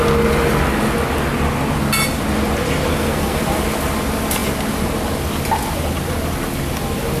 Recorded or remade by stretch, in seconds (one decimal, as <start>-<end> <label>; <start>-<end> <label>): 0.0-2.9 recorded; 2.9-3.4 remade; 3.4-7.2 recorded